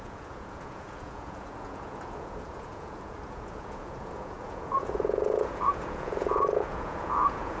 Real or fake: fake